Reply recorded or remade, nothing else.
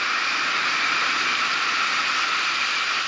recorded